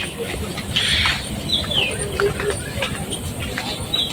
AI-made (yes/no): no